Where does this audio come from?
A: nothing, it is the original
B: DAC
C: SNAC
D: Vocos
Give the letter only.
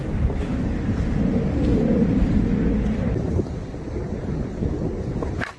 A